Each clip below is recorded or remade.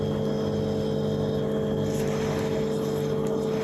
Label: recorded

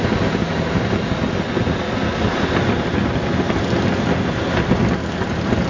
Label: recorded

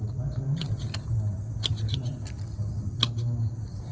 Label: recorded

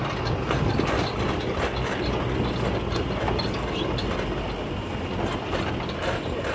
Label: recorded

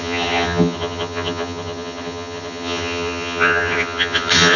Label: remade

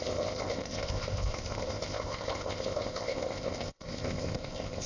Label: remade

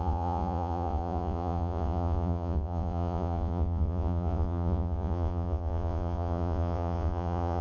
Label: remade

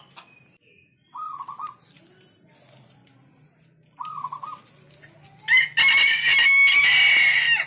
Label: recorded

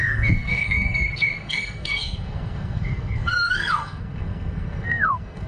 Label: remade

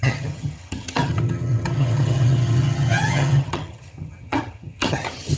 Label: remade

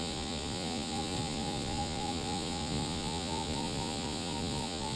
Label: remade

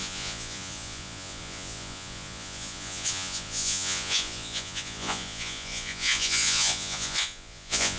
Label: remade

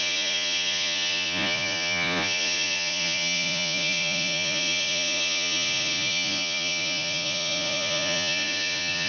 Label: remade